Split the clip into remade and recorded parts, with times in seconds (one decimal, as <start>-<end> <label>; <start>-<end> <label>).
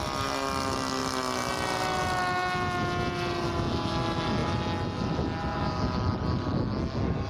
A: 0.0-7.3 recorded